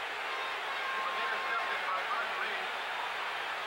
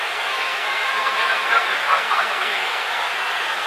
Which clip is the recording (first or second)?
first